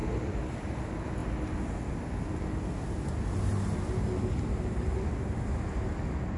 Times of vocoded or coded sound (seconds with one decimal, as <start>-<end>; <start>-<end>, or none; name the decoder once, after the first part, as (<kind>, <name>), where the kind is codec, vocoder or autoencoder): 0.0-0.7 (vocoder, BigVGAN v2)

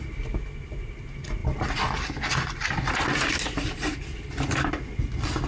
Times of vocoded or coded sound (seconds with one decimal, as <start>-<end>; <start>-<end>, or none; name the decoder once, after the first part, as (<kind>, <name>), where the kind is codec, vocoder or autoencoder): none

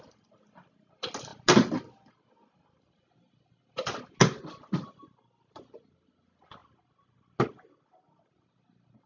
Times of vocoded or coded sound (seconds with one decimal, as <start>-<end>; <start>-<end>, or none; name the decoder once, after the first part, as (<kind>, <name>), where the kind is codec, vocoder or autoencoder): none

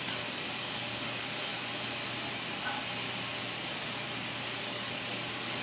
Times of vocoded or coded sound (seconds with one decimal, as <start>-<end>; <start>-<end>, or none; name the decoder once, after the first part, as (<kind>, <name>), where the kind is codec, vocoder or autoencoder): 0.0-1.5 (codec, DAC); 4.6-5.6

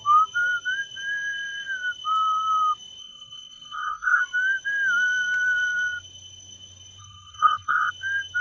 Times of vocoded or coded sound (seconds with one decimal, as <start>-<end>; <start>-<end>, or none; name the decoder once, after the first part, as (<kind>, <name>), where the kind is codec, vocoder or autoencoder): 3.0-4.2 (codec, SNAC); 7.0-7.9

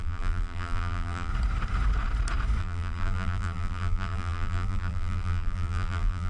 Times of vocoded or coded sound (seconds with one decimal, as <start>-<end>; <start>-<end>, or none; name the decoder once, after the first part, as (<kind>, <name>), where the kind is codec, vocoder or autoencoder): 0.0-1.3 (vocoder, BigVGAN v2); 2.6-6.3